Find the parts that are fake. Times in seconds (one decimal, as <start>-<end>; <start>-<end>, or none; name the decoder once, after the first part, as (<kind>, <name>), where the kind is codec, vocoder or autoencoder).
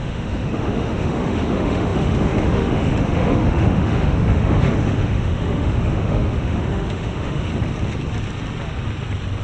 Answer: 0.0-7.5 (autoencoder, DAC-VAE)